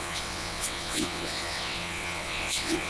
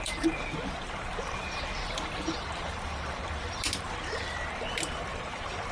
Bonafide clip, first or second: second